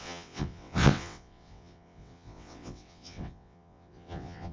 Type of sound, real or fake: fake